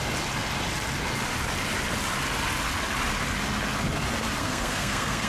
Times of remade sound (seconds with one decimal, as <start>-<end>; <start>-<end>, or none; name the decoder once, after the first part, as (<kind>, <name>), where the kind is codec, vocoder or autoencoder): 4.4-5.3 (codec, SNAC)